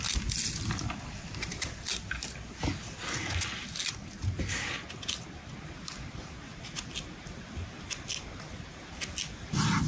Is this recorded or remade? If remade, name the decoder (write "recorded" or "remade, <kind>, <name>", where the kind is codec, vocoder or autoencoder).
recorded